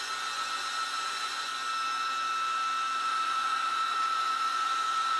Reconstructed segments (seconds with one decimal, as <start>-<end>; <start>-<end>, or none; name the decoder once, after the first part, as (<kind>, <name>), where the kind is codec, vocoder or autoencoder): 0.0-1.5 (vocoder, Vocos); 3.0-5.2